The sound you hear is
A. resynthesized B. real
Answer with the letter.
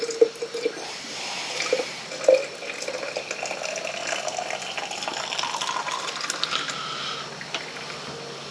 B